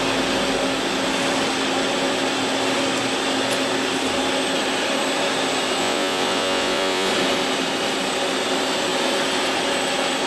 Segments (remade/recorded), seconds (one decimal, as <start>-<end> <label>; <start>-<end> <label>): 0.0-5.8 recorded; 5.8-7.1 remade; 7.1-10.3 recorded